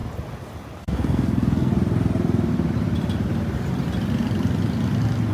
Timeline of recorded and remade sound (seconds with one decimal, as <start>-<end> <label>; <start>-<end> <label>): 0.0-0.8 recorded; 0.8-1.7 remade; 1.7-5.3 recorded